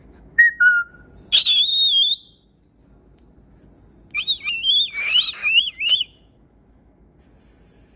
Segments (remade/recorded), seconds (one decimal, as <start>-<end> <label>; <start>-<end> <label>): 0.0-0.9 remade; 0.9-5.4 recorded; 5.4-7.2 remade; 7.2-8.0 recorded